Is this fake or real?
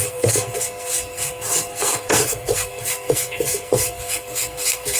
fake